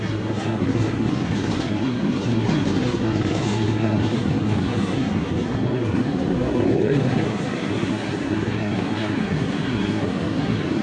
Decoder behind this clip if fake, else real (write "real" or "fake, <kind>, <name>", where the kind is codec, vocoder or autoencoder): fake, codec, SNAC